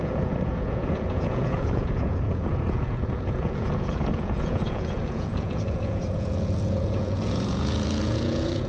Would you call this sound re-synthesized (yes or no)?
yes